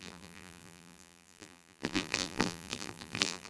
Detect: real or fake fake